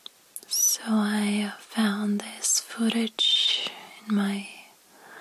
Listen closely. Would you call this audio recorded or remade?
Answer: recorded